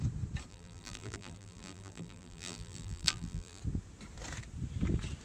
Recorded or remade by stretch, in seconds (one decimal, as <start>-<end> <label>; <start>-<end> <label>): 0.0-0.5 recorded; 0.5-3.6 remade; 3.6-5.2 recorded